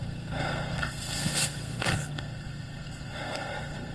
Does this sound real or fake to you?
fake